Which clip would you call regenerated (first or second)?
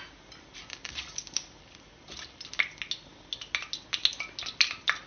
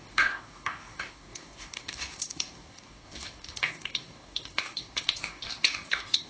second